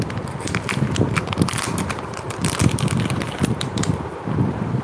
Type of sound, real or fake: fake